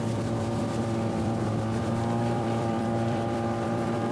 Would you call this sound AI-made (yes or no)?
yes